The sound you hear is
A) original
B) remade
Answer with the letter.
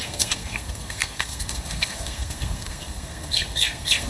B